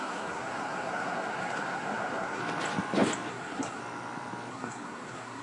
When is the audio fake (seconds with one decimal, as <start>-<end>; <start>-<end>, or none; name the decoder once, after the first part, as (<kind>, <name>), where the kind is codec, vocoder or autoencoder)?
0.0-2.4 (codec, SNAC); 3.3-3.8; 4.5-5.4